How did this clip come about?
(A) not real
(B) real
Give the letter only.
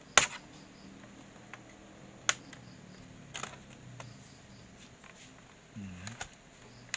B